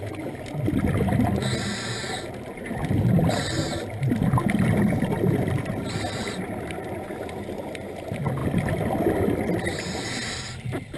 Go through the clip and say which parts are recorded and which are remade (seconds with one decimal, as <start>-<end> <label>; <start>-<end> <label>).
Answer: 0.0-11.0 recorded